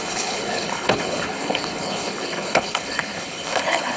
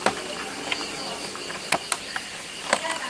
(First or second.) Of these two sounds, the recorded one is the second